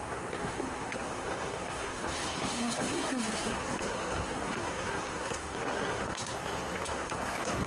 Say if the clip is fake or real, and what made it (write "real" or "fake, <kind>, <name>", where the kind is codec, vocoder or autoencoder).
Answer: fake, codec, SNAC